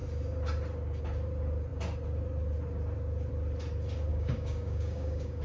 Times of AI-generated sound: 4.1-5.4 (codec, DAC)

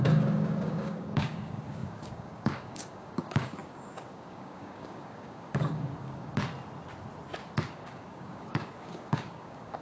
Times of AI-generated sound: 0.0-6.3 (codec, DAC); 7.7-9.8

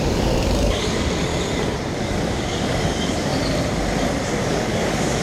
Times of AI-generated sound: 0.0-1.3 (codec, DAC); 2.0-3.3; 4.5-5.2

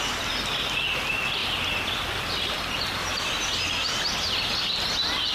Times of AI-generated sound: none

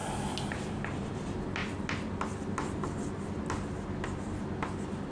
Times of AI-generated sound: none

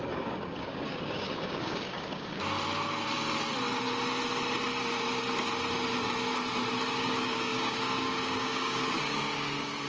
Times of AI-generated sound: 0.0-2.4 (codec, DAC); 6.9-9.9

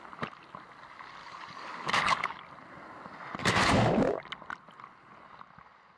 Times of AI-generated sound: 1.2-2.4 (codec, DAC); 3.4-4.2